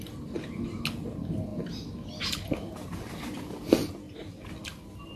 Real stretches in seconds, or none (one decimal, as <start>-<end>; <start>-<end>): 0.0-5.2